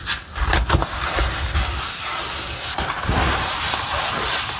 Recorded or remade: recorded